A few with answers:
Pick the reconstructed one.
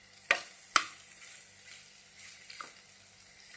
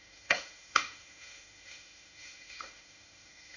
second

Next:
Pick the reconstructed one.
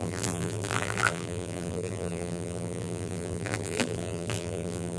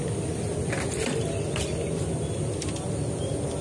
first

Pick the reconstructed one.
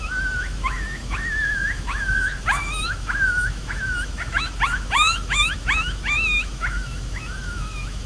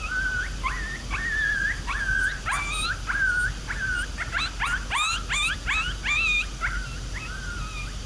first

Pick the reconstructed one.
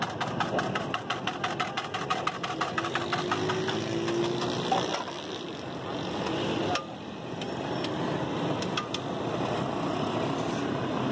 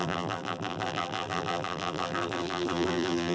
second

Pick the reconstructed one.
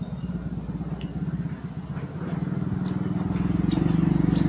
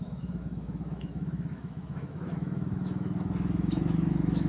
second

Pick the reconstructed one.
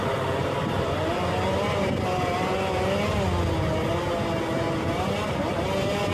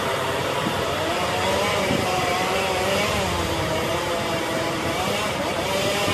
second